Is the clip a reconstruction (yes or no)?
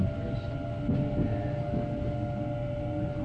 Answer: no